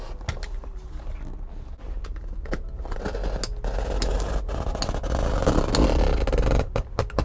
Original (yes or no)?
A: yes